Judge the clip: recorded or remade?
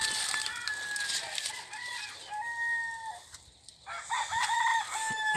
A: recorded